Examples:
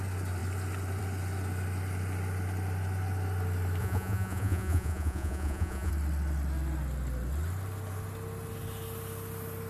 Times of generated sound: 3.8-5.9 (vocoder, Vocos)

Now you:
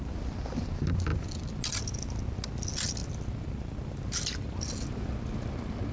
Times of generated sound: none

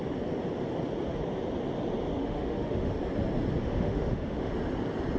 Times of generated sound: 2.2-2.9 (autoencoder, DAC-VAE); 3.6-4.5